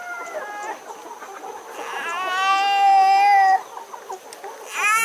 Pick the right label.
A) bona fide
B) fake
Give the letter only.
A